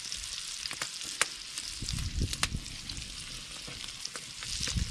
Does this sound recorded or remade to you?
recorded